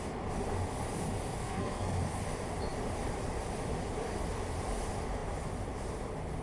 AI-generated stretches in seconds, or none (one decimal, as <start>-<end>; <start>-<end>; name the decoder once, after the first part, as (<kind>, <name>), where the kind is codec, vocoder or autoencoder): 1.4-2.0 (codec, SNAC)